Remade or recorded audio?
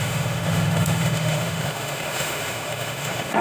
remade